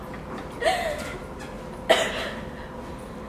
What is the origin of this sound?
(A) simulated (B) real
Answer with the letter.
B